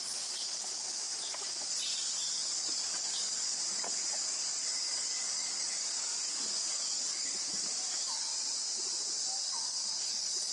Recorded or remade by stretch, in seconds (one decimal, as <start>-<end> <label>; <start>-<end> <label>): 0.0-1.1 remade; 1.1-2.0 recorded; 2.0-8.3 remade; 8.3-9.4 recorded; 9.4-10.5 remade